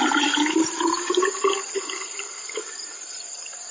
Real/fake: fake